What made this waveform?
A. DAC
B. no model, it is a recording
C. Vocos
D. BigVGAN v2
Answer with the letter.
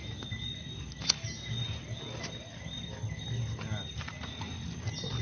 B